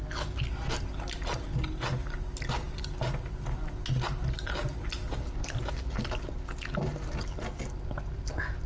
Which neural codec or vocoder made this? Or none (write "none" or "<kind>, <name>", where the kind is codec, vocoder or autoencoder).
none